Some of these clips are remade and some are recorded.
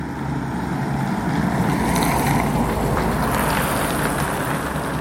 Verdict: recorded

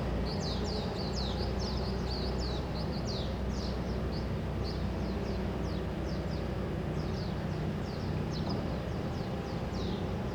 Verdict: recorded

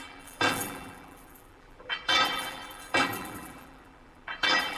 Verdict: remade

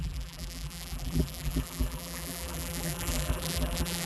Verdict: remade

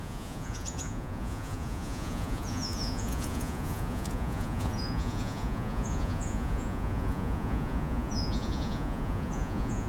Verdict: remade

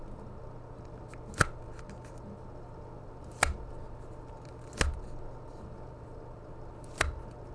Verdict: recorded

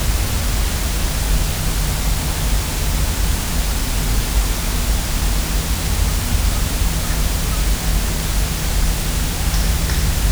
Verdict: recorded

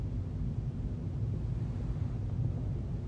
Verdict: recorded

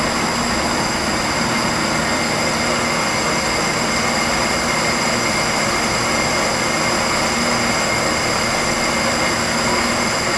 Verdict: recorded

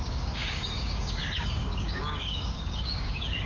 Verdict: remade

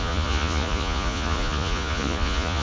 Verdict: remade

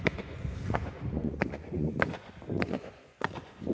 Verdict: remade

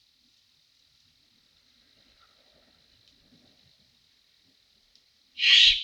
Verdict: recorded